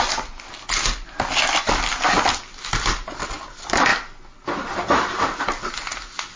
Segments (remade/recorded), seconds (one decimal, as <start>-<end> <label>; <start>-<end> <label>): 0.0-6.4 recorded